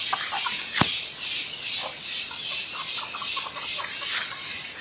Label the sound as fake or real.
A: real